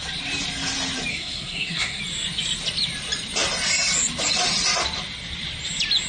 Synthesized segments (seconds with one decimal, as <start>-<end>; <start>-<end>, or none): 1.1-2.0